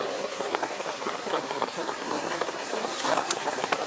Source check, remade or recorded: remade